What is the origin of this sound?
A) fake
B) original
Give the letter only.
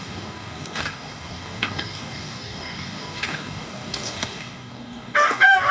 A